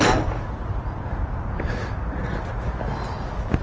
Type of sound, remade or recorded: recorded